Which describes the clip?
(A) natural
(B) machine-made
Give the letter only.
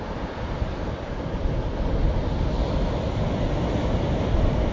A